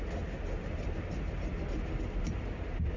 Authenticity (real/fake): real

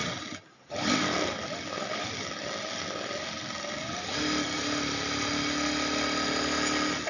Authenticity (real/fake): real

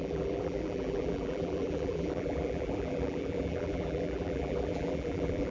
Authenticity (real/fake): fake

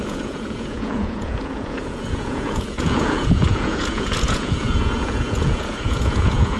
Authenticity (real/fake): fake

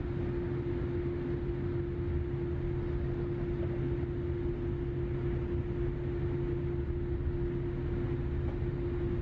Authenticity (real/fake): real